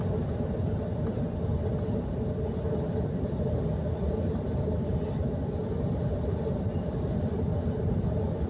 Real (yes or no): yes